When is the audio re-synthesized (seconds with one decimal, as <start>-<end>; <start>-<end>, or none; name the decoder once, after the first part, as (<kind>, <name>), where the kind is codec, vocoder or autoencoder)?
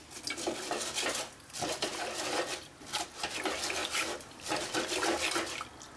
3.8-4.5 (vocoder, BigVGAN v2)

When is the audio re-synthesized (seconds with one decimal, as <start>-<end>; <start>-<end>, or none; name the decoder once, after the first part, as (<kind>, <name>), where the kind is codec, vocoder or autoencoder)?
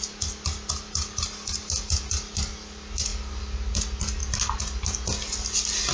none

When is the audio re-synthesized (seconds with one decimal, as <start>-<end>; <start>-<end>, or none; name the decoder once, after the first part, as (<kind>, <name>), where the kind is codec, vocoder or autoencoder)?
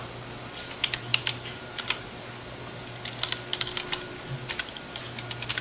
1.1-2.2 (vocoder, BigVGAN v2)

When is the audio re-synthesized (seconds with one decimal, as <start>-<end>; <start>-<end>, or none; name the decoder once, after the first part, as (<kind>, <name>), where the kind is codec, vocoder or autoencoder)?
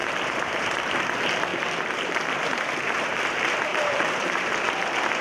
0.0-0.8 (vocoder, BigVGAN v2); 1.5-3.2; 3.7-4.5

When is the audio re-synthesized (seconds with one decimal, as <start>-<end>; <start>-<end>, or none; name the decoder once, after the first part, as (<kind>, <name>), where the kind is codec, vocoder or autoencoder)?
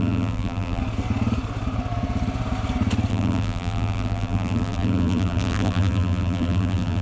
0.0-0.8 (vocoder, BigVGAN v2); 3.1-7.0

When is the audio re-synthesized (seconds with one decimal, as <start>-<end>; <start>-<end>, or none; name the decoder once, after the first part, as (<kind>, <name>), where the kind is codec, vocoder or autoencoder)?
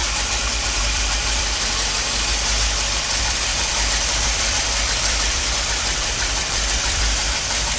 0.0-1.8 (vocoder, BigVGAN v2); 3.2-7.8